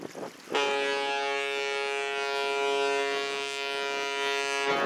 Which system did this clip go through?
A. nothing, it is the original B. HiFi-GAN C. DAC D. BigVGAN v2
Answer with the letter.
A